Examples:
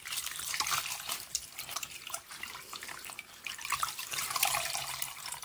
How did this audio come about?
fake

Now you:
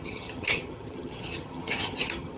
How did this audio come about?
fake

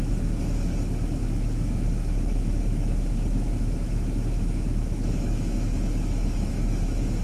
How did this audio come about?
fake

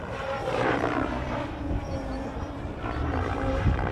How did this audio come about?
fake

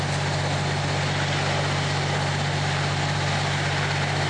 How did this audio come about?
real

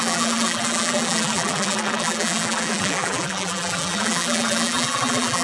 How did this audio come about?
fake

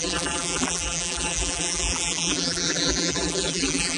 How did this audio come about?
fake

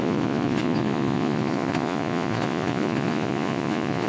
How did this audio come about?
fake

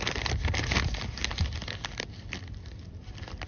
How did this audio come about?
real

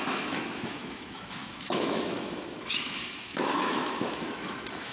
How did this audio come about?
fake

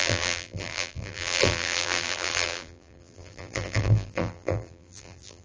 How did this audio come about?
fake